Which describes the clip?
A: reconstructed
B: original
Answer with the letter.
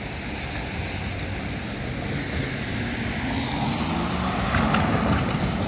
B